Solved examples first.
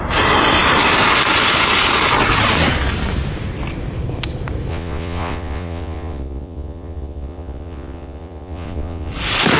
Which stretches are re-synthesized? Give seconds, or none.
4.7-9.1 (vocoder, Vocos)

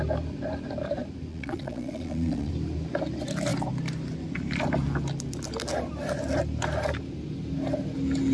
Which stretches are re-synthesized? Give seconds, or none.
1.3-2.5 (vocoder, Vocos)

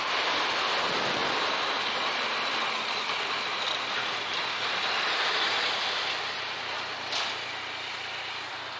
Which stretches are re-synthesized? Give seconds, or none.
none

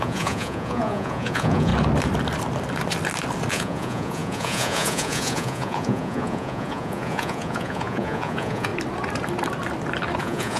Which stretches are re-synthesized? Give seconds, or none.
0.0-1.7 (vocoder, Vocos); 3.5-8.7; 10.2-10.6

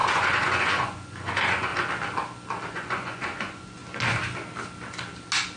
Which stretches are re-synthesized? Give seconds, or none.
0.0-1.7 (vocoder, Vocos); 2.7-3.8

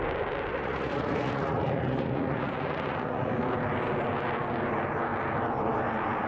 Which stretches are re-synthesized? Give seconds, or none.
0.5-3.3 (vocoder, Vocos)